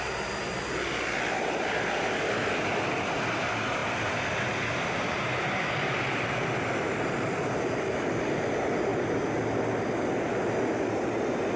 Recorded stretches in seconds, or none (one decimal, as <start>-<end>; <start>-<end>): 0.0-11.6